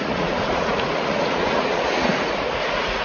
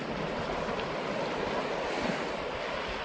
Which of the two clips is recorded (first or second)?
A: second